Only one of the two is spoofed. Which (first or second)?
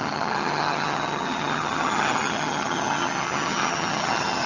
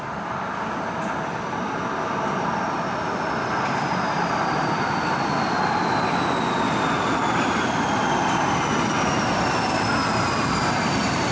first